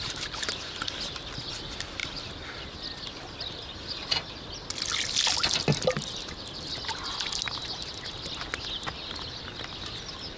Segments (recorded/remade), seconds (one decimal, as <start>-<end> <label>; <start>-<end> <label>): 0.0-10.4 recorded